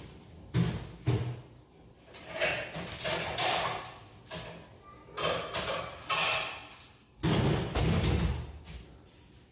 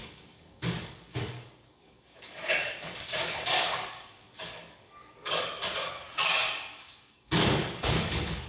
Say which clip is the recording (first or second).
first